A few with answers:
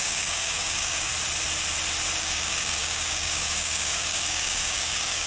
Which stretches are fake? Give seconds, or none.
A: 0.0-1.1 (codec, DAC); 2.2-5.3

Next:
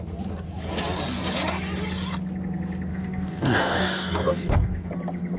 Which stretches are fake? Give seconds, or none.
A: 2.9-4.9 (codec, DAC)

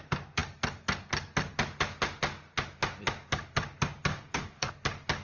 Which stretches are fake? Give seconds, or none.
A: 4.1-4.7 (codec, DAC)

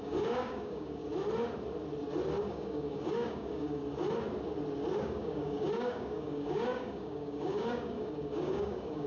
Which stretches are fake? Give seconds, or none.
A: 0.0-1.0 (codec, DAC); 2.4-3.8; 5.0-9.1

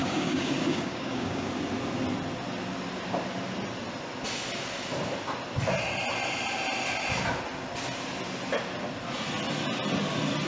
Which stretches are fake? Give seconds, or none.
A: 0.0-1.5 (codec, DAC)

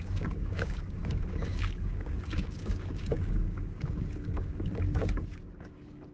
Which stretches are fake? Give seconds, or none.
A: 0.0-6.1 (codec, DAC)